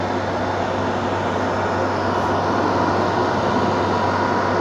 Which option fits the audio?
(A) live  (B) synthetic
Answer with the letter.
A